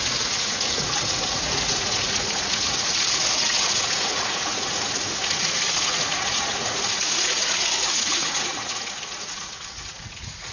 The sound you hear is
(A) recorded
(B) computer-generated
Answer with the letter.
B